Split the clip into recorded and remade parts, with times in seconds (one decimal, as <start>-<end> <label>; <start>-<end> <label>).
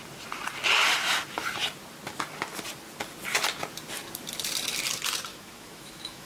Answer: 0.0-5.3 recorded; 5.3-6.3 remade